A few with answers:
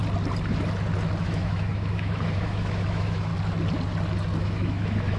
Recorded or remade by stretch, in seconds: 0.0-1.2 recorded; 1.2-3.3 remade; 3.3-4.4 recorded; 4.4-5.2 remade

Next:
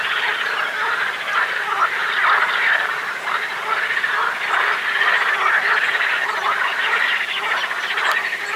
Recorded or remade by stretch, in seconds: 0.0-8.6 recorded

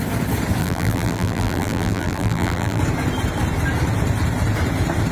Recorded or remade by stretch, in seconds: 0.0-0.6 recorded; 0.6-2.8 remade; 2.8-5.1 recorded

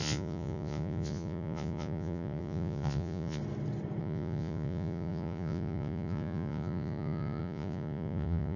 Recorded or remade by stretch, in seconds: 0.0-3.4 remade; 3.4-4.0 recorded; 4.0-8.6 remade

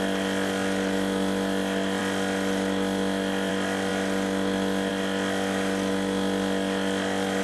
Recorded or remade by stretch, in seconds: 0.0-7.4 recorded

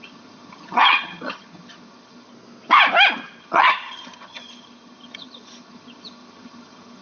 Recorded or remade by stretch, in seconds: 0.0-2.3 remade; 2.3-3.4 recorded; 3.4-7.0 remade

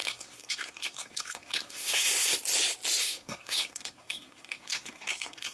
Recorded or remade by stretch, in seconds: 0.0-2.3 remade; 2.3-3.0 recorded; 3.0-5.5 remade

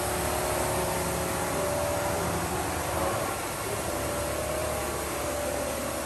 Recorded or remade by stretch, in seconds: 0.0-4.6 recorded; 4.6-5.3 remade; 5.3-6.1 recorded